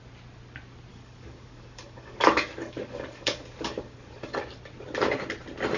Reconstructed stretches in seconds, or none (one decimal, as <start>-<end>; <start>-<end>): 0.9-4.4

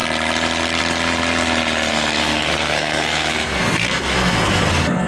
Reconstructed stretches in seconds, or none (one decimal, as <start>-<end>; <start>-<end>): 1.9-5.1

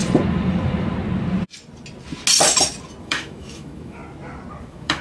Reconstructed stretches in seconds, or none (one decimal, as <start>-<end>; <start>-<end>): 3.0-4.0; 4.6-5.0

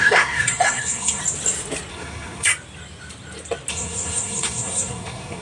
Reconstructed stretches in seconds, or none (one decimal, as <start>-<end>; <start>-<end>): 0.0-1.2; 1.9-2.5; 3.7-5.4

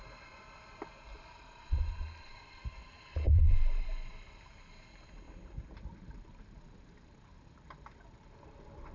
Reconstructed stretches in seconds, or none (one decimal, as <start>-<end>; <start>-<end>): 1.1-4.4